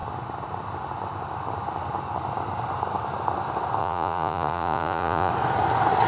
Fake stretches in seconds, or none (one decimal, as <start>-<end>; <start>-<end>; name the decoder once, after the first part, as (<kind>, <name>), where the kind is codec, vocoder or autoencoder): 3.8-5.3 (vocoder, Vocos)